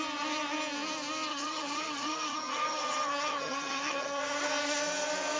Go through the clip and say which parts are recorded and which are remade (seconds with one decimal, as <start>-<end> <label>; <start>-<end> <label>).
0.0-1.3 recorded; 1.3-4.2 remade; 4.2-5.4 recorded

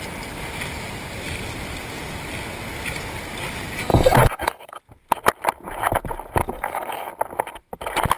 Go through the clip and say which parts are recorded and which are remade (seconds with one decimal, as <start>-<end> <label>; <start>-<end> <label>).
0.0-3.9 recorded; 3.9-4.8 remade; 4.8-6.4 recorded; 6.4-7.1 remade; 7.1-8.2 recorded